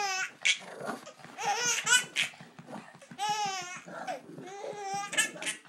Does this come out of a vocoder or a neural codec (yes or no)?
no